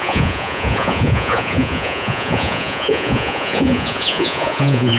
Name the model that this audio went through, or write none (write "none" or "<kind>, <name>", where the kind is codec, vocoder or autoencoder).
vocoder, Vocos